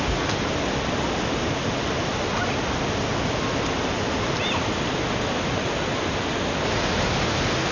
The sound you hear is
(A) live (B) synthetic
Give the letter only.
A